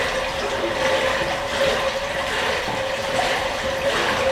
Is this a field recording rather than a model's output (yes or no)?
yes